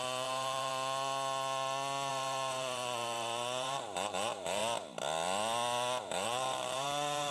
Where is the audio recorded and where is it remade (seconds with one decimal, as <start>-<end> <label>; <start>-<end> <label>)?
0.0-0.7 remade; 0.7-2.1 recorded; 2.1-4.6 remade; 4.6-6.0 recorded; 6.0-7.3 remade